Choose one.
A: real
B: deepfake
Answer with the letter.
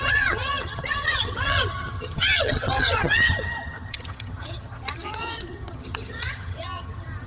B